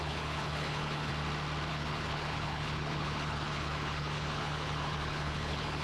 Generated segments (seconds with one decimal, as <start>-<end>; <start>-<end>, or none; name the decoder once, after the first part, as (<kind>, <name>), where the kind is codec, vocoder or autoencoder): 0.0-1.1 (codec, HILCodec); 1.7-5.8